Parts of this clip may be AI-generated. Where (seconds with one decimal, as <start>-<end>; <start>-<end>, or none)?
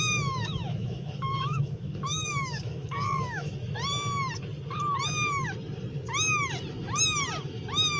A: 0.0-3.5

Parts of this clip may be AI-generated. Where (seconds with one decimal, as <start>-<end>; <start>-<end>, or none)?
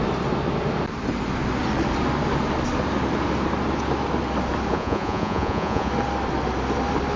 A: 4.7-5.9